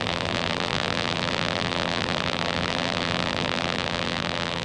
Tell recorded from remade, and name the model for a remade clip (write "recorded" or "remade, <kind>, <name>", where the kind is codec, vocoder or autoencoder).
remade, vocoder, BigVGAN v2